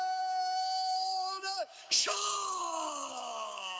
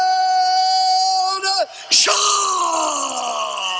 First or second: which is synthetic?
first